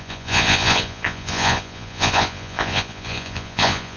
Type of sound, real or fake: fake